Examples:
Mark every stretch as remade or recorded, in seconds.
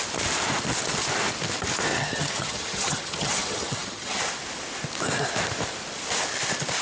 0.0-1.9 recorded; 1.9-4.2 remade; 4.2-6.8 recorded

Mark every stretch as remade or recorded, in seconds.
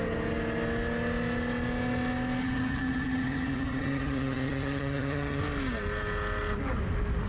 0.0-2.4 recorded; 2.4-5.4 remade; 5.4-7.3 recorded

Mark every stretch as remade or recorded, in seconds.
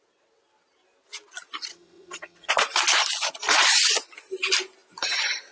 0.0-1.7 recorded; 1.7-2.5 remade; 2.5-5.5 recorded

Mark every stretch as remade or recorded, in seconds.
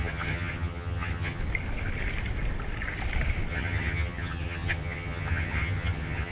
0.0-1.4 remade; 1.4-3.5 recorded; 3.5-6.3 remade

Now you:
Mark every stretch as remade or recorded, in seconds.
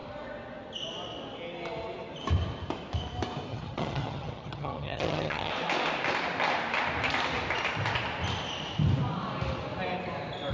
0.0-3.5 recorded; 3.5-5.5 remade; 5.5-10.5 recorded